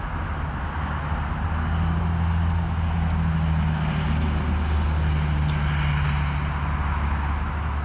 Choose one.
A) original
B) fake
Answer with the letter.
A